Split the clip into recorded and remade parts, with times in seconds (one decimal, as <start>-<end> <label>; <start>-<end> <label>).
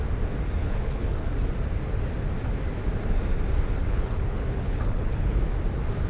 0.0-0.6 recorded; 0.6-1.3 remade; 1.3-3.8 recorded; 3.8-5.4 remade; 5.4-6.1 recorded